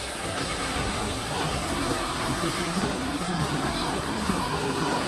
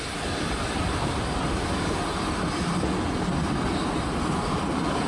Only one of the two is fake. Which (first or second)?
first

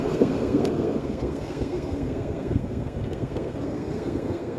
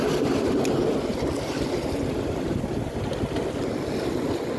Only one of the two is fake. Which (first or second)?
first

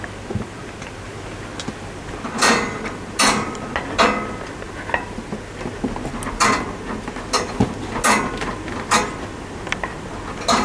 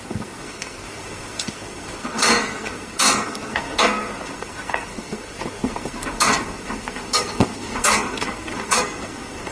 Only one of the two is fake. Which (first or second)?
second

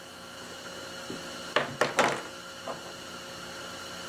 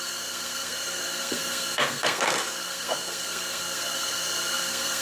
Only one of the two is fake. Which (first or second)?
second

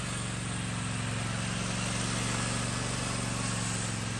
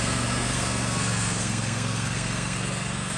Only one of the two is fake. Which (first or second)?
second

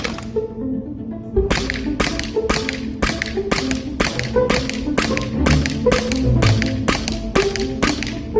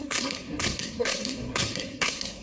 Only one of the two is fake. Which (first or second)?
second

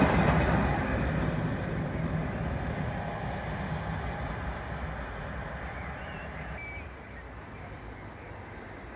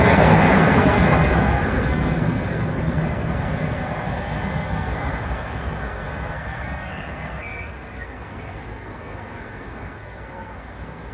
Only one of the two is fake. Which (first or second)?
second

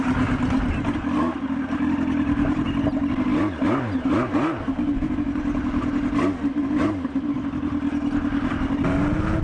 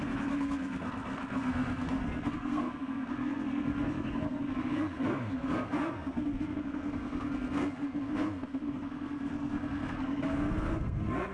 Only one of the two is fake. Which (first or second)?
second